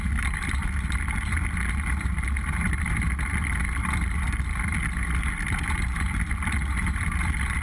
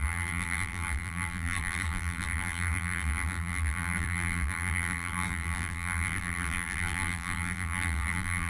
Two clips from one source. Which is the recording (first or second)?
first